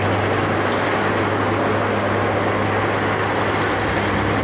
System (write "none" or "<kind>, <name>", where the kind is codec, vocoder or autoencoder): none